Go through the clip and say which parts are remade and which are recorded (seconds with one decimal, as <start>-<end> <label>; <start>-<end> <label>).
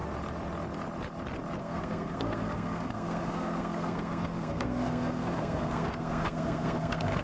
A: 0.0-1.6 recorded; 1.6-7.2 remade